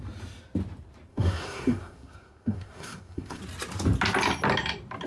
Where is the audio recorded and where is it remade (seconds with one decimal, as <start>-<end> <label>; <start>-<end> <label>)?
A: 0.0-1.1 recorded; 1.1-3.4 remade; 3.4-5.1 recorded